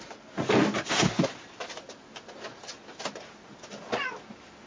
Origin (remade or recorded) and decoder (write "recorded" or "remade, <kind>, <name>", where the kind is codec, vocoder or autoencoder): recorded